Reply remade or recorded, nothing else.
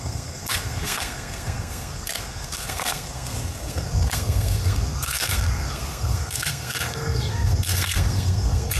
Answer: remade